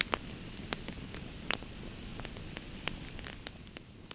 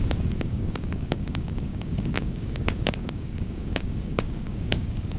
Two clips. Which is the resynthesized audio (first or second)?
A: second